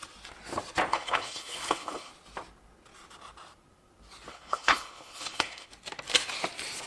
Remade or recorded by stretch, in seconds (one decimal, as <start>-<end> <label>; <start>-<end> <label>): 0.0-0.9 recorded; 0.9-2.1 remade; 2.1-4.3 recorded; 4.3-5.7 remade; 5.7-6.9 recorded